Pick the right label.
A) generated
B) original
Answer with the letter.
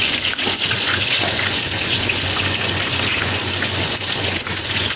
A